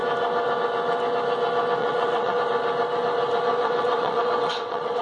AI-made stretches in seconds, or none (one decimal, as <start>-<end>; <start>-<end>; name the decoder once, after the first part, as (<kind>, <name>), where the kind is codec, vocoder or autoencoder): 1.8-2.4 (vocoder, WaveNeXt); 3.6-5.0